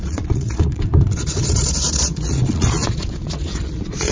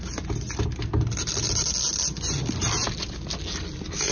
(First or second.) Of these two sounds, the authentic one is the second